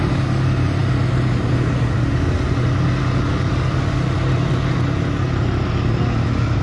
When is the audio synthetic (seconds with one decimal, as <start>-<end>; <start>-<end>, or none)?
none